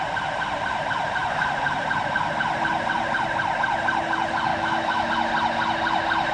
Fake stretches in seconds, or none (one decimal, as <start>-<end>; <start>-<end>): 4.5-5.1